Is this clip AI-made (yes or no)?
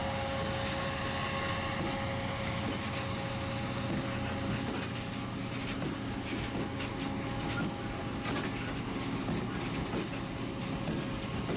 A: no